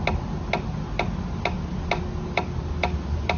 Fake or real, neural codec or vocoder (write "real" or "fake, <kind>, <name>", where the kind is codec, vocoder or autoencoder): real